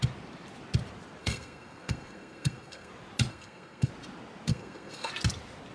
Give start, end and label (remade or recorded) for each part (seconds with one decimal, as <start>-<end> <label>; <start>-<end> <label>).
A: 0.0-1.2 recorded; 1.2-2.9 remade; 2.9-3.3 recorded; 3.3-3.9 remade; 3.9-4.5 recorded; 4.5-5.1 remade; 5.1-5.7 recorded